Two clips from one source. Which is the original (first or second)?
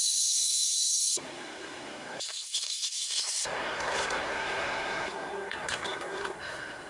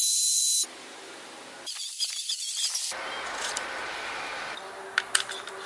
second